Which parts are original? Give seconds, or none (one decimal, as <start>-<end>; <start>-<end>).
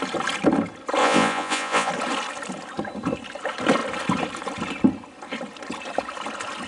0.0-1.0; 1.9-6.7